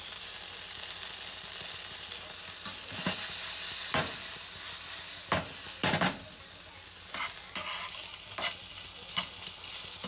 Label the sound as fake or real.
real